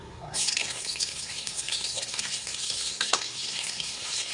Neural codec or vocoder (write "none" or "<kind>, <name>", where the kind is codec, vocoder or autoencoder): codec, SNAC